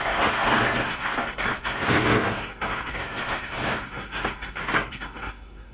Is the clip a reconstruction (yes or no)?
yes